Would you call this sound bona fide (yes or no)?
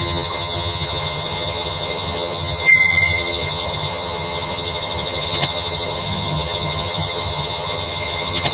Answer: no